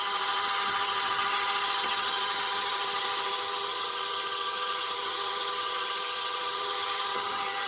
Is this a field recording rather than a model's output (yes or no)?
no